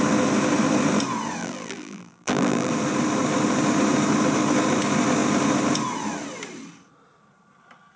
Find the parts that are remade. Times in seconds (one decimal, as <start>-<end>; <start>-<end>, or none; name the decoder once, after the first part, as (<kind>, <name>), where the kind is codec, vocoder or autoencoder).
1.4-2.7 (vocoder, BigVGAN v2)